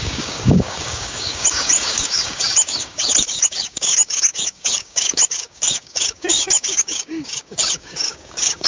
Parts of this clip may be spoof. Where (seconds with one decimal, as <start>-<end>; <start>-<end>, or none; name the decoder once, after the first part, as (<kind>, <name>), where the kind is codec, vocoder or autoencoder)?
0.0-8.7 (codec, DAC)